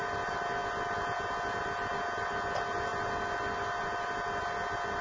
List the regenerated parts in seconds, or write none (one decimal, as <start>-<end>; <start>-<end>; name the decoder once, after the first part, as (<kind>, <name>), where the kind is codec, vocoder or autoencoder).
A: none